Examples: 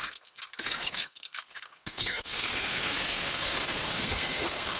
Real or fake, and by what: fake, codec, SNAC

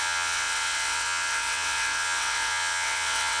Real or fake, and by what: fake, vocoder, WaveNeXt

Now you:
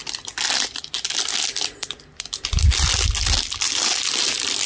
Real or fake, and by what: real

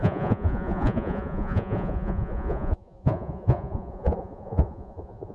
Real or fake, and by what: fake, vocoder, Vocos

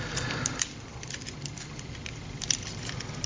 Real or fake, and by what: real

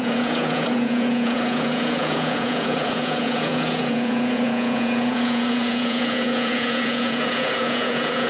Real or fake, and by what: fake, vocoder, Vocos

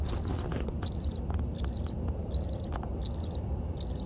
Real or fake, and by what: real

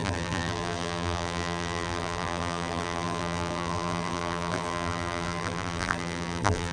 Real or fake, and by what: fake, vocoder, BigVGAN v2